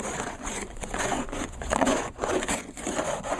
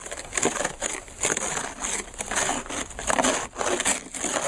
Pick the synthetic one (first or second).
first